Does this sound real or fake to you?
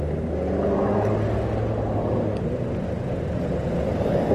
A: real